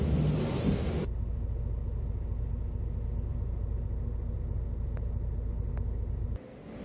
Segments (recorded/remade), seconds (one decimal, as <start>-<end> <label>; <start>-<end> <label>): 0.0-6.8 recorded